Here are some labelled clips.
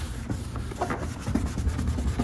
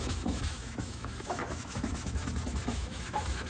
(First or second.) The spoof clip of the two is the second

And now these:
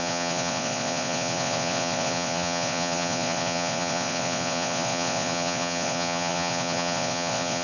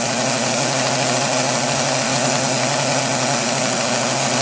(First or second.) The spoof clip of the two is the first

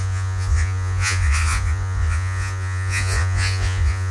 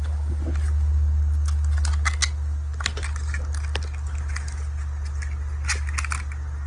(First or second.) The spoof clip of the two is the first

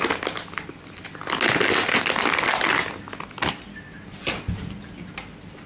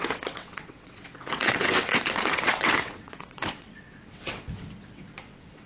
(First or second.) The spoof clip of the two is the second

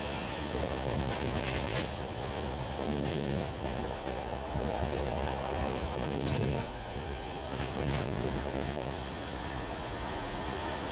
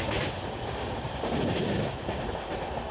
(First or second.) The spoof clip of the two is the first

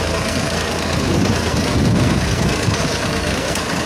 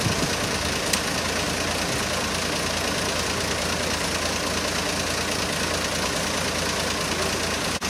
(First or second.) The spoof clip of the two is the first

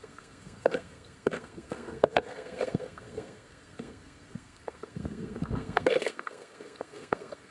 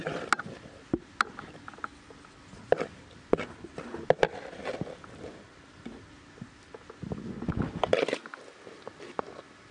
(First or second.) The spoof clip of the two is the first